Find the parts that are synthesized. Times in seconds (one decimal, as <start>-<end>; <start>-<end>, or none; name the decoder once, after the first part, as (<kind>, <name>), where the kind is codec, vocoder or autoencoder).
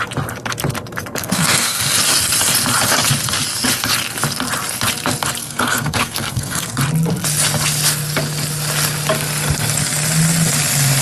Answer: 1.2-1.8 (codec, SNAC); 5.4-6.8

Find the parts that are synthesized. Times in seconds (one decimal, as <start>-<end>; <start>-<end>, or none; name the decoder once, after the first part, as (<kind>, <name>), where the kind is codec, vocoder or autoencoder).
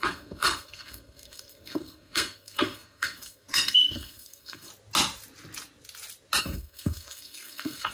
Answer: 0.0-4.7 (codec, SNAC); 6.4-7.9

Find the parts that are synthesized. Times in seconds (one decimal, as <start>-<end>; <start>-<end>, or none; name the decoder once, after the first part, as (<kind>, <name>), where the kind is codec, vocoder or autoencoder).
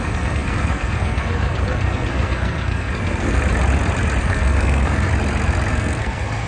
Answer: 0.0-3.4 (codec, SNAC); 4.2-5.1; 5.7-6.5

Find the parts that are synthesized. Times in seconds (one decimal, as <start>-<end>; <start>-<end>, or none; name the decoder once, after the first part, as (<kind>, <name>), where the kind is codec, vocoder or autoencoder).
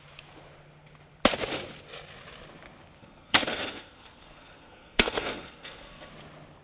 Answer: 3.0-6.1 (codec, SNAC)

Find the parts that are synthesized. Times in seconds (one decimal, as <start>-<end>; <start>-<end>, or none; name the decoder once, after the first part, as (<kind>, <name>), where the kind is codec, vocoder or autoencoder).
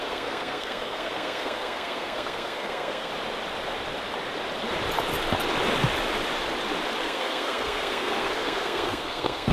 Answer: 0.0-3.1 (codec, SNAC); 7.0-9.5